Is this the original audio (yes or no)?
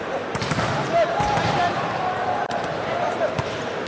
no